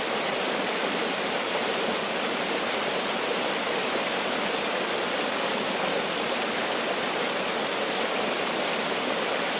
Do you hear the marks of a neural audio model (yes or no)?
no